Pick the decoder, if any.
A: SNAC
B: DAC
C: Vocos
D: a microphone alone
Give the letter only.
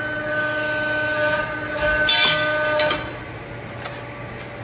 D